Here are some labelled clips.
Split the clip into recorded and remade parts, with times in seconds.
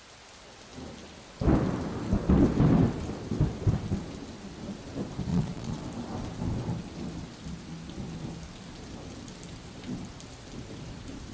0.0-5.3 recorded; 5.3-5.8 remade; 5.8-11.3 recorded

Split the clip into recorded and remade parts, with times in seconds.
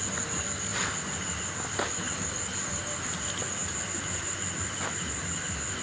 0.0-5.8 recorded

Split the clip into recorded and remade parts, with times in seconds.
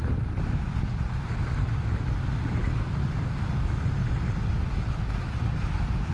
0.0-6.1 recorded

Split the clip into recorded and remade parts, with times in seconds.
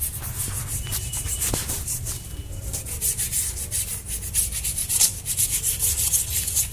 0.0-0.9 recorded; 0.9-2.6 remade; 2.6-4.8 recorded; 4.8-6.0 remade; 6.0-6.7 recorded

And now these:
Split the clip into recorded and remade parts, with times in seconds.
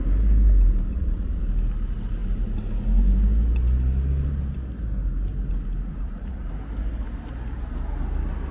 0.0-0.9 recorded; 0.9-1.4 remade; 1.4-6.0 recorded; 6.0-6.5 remade; 6.5-8.5 recorded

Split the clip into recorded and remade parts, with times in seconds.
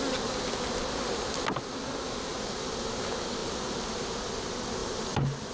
0.0-3.4 recorded; 3.4-4.0 remade; 4.0-4.8 recorded; 4.8-5.5 remade